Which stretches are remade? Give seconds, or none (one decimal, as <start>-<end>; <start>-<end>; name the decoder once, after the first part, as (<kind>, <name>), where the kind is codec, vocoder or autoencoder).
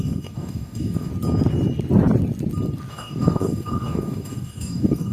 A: 0.0-1.1 (codec, DAC); 2.9-5.1